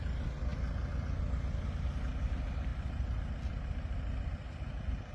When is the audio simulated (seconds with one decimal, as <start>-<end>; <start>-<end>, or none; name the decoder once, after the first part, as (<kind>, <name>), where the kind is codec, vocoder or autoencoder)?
none